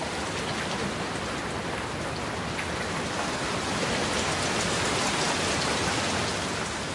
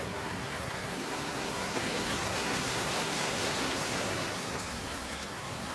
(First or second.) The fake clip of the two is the second